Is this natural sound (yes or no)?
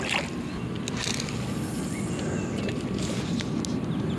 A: yes